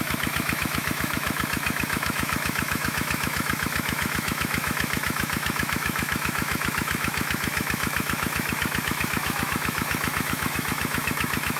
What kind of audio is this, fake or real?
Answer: fake